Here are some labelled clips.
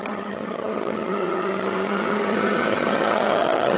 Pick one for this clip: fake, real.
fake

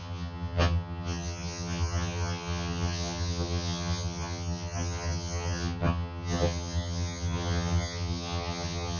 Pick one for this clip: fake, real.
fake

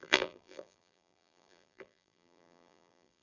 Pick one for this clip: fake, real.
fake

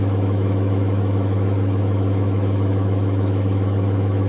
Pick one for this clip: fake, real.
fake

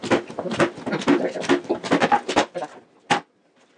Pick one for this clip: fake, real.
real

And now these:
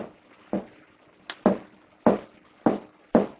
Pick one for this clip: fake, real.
real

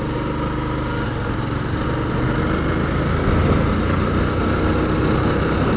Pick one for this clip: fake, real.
real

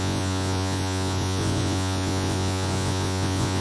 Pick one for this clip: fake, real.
fake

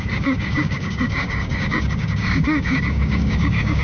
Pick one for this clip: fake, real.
fake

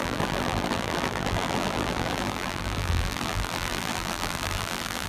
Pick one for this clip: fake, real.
fake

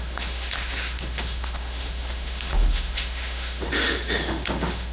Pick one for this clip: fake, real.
fake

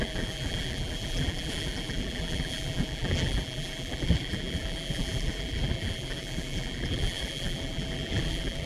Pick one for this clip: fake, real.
fake